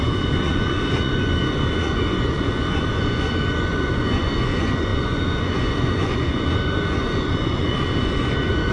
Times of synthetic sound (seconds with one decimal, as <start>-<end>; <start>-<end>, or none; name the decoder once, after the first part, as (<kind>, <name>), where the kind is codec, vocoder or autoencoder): 0.0-8.7 (vocoder, Vocos)